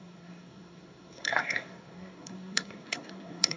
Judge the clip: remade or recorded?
remade